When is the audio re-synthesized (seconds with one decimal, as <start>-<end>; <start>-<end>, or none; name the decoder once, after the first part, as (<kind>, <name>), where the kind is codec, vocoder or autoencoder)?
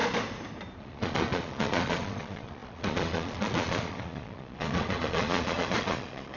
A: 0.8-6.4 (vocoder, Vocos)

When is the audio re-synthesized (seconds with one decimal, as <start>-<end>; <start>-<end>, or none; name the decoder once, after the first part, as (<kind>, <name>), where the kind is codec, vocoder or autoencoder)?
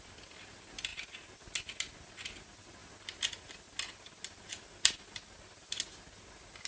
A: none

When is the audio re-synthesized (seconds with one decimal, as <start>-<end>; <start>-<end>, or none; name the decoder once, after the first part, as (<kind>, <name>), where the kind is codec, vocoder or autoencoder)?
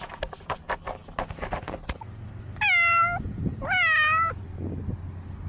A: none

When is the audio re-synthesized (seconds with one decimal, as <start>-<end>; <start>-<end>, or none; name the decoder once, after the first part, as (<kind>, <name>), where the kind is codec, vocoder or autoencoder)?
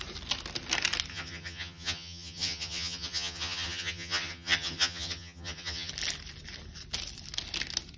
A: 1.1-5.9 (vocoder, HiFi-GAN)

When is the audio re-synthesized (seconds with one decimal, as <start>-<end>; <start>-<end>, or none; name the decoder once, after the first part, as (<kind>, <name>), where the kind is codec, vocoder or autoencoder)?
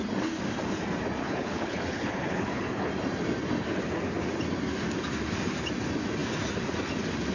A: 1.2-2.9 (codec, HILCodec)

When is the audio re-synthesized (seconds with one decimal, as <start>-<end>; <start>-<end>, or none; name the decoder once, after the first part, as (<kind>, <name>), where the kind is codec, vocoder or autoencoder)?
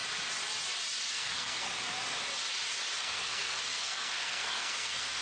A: 1.1-1.7 (codec, SNAC); 3.0-5.2